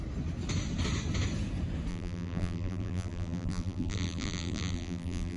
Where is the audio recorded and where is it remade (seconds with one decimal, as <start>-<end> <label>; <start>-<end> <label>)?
0.0-1.9 recorded; 1.9-5.4 remade